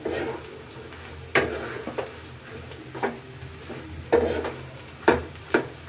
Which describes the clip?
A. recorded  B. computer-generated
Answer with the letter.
A